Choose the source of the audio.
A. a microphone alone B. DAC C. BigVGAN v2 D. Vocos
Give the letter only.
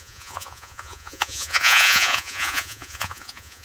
D